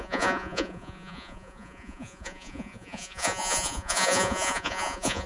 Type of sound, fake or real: fake